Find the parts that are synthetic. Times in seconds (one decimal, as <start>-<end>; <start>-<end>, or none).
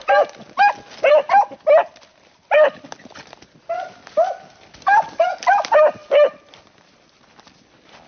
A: 1.1-1.9; 6.0-6.8